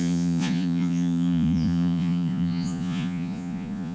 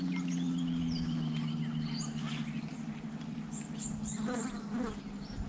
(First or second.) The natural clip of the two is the second